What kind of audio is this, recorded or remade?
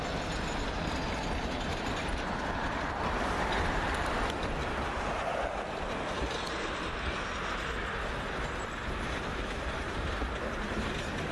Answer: recorded